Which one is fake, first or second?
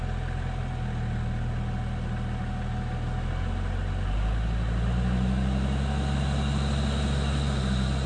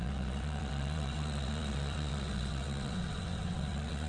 second